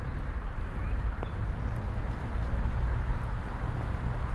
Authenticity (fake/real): real